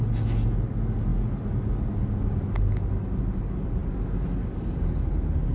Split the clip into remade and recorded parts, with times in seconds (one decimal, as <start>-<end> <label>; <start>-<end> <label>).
0.0-5.5 recorded